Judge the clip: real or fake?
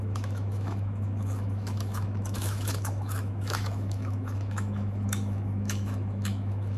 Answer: fake